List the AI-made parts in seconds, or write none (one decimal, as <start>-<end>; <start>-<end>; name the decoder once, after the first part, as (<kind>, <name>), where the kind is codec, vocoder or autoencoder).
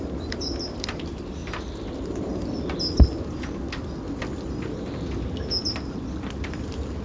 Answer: 0.0-1.4 (vocoder, BigVGAN v2); 5.6-7.0